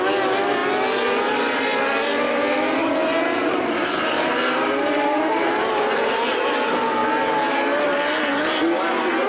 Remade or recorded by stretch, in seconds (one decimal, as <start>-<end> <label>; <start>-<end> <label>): 0.0-2.8 recorded; 2.8-5.6 remade; 5.6-9.3 recorded